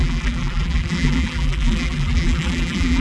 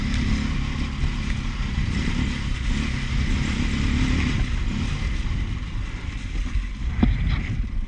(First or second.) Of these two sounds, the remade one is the first